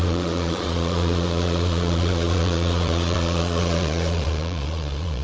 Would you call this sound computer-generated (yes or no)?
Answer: yes